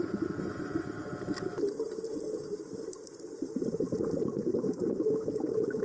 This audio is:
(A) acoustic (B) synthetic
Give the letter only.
B